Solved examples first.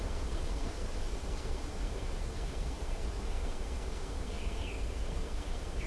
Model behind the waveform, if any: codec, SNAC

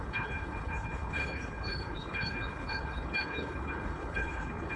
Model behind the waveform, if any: codec, HILCodec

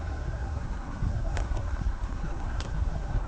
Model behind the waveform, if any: codec, SNAC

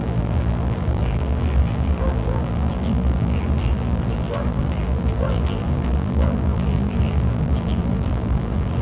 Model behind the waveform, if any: vocoder, BigVGAN v2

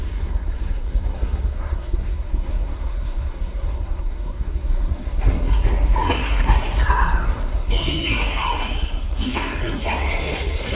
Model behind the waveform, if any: codec, SNAC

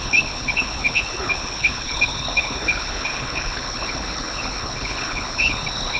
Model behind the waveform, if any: codec, HILCodec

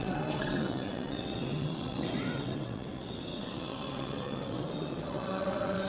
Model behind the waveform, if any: vocoder, WaveNeXt